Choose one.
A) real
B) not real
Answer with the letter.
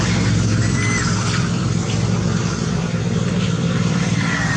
A